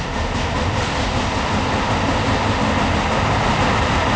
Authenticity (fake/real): real